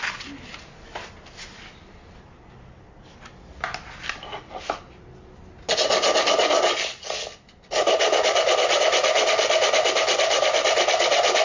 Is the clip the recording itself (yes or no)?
yes